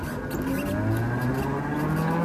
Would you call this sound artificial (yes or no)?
no